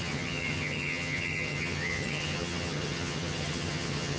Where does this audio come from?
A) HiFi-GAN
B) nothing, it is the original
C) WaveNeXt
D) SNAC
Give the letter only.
A